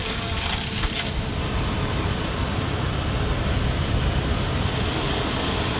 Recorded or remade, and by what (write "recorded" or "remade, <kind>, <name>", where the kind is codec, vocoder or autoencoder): recorded